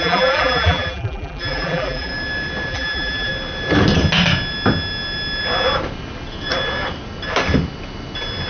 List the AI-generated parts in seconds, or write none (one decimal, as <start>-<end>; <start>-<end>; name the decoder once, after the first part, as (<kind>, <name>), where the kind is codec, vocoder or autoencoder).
0.0-2.1 (vocoder, BigVGAN v2); 2.7-3.3